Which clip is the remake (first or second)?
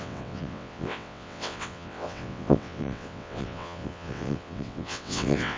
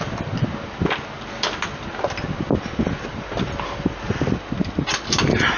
first